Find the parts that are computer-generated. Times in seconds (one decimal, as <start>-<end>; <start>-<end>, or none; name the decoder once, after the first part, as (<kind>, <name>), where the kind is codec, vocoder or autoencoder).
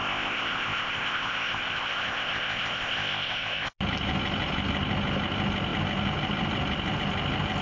0.0-3.7 (codec, ZipCodec)